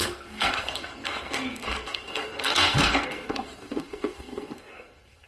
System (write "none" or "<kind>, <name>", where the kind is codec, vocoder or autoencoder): codec, SNAC